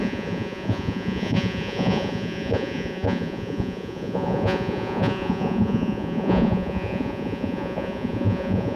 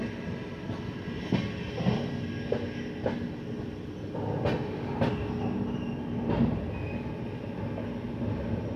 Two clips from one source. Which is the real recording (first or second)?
second